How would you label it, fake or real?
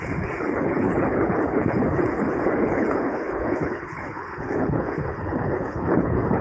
fake